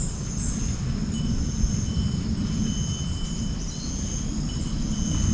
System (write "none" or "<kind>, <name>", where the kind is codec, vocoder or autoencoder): none